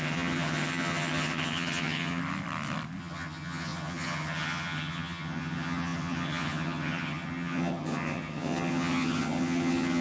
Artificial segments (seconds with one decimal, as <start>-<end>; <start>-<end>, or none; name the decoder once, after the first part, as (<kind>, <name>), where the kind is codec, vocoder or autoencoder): 0.0-2.2 (vocoder, HiFi-GAN); 3.0-10.0